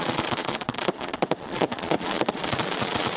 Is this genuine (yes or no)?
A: no